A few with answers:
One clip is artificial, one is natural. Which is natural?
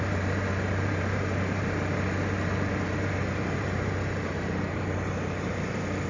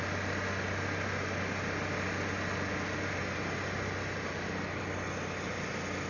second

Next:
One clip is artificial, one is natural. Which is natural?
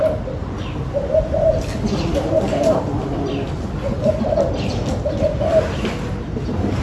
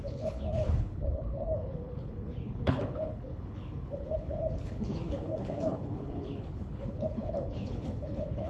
first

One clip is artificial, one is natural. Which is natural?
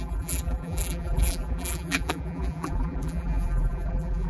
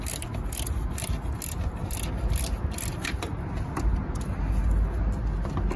second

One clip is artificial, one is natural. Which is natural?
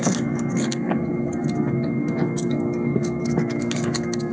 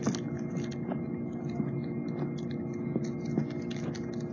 second